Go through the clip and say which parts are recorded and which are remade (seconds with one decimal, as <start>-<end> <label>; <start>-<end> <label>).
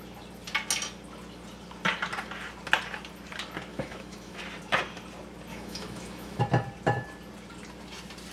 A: 0.0-3.7 recorded; 3.7-4.4 remade; 4.4-5.5 recorded; 5.5-6.4 remade; 6.4-8.3 recorded